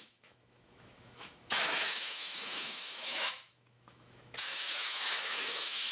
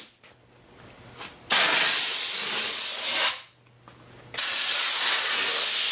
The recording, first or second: second